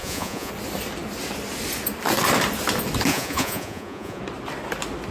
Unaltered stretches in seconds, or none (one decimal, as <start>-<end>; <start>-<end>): 0.5-3.1; 4.2-5.1